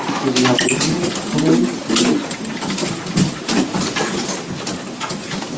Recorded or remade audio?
recorded